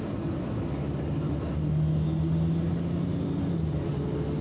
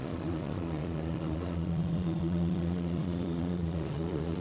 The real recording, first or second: first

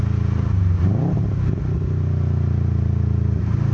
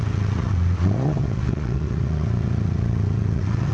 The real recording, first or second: first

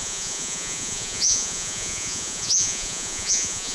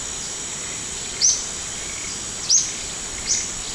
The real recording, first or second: second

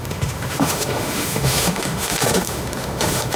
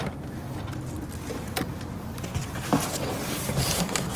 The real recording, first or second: second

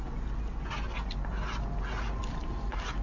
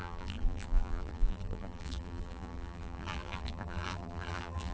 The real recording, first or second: first